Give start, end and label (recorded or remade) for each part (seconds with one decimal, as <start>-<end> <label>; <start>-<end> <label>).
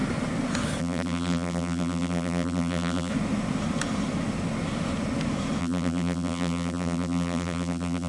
0.0-0.8 recorded; 0.8-3.1 remade; 3.1-5.6 recorded; 5.6-8.1 remade